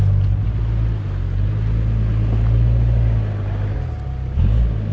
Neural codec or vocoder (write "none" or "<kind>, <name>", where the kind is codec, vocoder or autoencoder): none